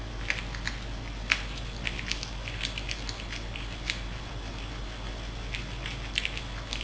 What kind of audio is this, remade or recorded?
recorded